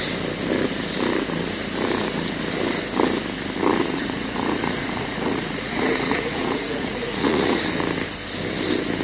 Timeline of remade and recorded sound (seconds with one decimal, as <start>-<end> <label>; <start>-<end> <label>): 0.0-3.8 recorded; 3.8-7.6 remade; 7.6-9.0 recorded